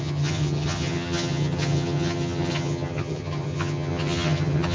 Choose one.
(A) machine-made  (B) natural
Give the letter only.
A